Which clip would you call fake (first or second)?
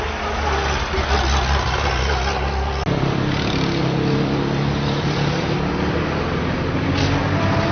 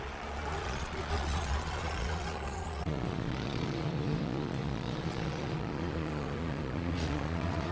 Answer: second